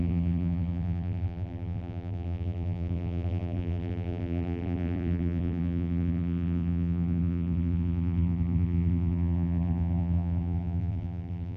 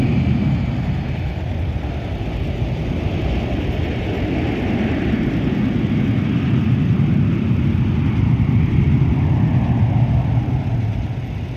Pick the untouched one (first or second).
second